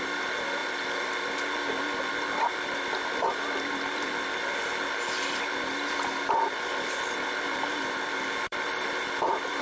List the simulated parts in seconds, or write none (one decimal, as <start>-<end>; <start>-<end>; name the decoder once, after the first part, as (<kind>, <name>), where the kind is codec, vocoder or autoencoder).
none

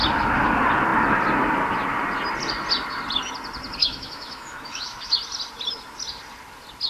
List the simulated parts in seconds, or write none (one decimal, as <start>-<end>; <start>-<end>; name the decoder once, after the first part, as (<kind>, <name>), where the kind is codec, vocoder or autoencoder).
3.8-5.1 (autoencoder, DAC-VAE)

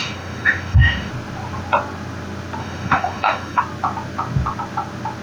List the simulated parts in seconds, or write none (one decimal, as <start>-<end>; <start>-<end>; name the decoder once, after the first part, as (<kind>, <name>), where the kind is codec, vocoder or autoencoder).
0.0-1.1 (autoencoder, DAC-VAE); 2.6-3.6

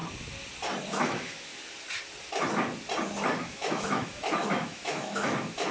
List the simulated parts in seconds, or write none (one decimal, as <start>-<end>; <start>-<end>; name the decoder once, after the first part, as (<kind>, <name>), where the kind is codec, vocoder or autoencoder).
0.9-1.5 (autoencoder, DAC-VAE); 3.4-5.7

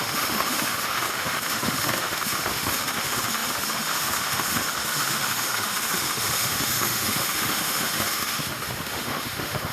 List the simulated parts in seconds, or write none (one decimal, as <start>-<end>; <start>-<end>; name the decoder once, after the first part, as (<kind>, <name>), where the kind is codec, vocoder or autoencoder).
0.0-9.7 (autoencoder, DAC-VAE)

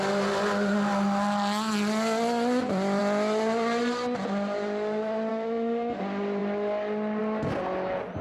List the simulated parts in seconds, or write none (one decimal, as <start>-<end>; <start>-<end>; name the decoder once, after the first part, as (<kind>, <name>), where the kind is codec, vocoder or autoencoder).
5.3-6.0 (autoencoder, DAC-VAE)

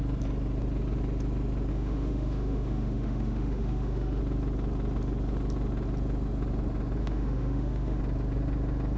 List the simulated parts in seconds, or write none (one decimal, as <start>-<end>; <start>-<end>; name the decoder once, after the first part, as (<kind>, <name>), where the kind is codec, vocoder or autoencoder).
1.7-4.2 (autoencoder, DAC-VAE); 7.0-8.0

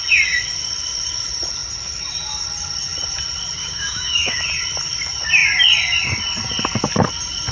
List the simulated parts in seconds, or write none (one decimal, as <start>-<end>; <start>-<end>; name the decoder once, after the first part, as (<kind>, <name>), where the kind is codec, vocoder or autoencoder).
3.6-4.4 (autoencoder, DAC-VAE)